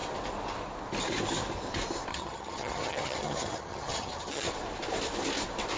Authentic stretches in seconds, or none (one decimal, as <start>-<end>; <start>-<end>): 0.0-2.1; 4.5-5.8